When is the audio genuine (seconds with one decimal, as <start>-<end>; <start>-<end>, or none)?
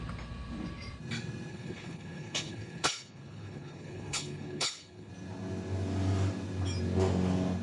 0.0-1.5; 5.1-7.6